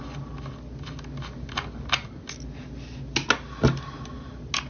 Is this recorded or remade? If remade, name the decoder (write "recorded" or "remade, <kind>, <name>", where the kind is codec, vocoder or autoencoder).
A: recorded